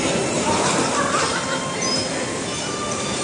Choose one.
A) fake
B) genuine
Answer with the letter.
B